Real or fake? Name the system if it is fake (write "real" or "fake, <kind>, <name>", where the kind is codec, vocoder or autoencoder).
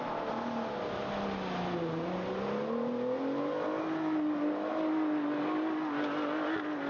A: real